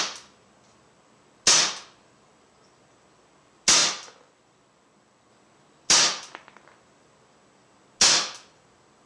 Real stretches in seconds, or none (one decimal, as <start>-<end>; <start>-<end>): 0.0-9.1